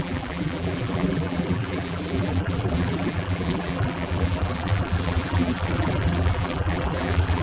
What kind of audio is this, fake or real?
fake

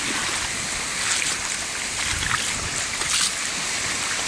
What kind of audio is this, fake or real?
real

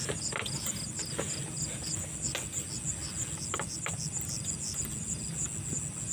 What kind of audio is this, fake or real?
real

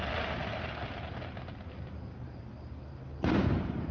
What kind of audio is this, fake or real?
real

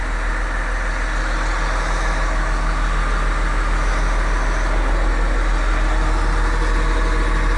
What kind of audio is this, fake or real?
real